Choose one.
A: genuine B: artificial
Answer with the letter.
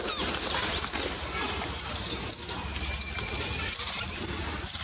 B